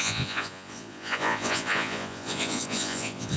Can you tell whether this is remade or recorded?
remade